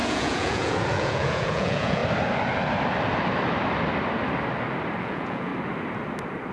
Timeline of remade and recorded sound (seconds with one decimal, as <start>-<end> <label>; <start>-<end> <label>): 0.0-2.0 remade; 2.0-5.0 recorded; 5.0-5.5 remade; 5.5-6.5 recorded